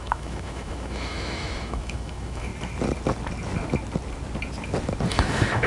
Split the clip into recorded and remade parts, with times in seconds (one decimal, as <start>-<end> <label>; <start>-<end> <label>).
0.0-2.5 remade; 2.5-5.1 recorded; 5.1-5.7 remade